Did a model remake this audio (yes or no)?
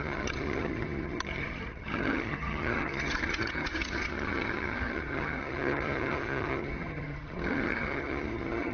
yes